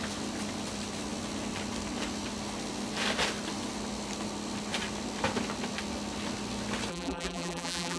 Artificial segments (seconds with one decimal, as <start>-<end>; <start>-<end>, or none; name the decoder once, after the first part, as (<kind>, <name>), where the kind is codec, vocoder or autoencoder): 6.9-8.0 (vocoder, BigVGAN v2)